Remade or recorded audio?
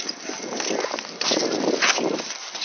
recorded